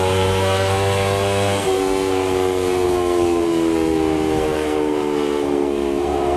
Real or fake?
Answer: fake